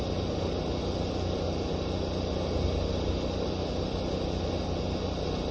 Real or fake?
real